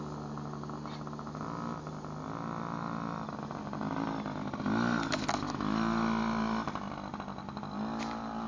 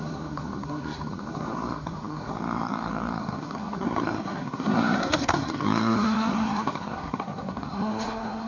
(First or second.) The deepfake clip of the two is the second